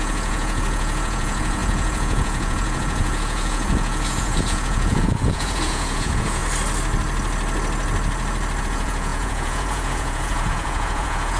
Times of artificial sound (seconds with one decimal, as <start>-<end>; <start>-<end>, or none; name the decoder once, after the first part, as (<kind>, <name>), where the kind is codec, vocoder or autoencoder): 0.0-6.4 (vocoder, Vocos); 8.6-11.4